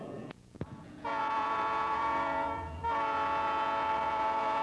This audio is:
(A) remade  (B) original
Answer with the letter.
A